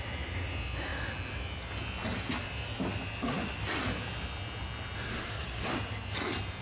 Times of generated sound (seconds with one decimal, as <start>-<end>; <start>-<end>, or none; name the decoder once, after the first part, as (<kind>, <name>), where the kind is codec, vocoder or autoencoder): 5.1-5.7 (codec, SNAC)